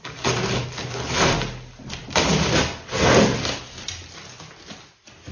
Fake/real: real